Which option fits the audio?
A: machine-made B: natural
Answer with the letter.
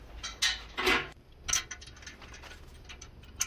B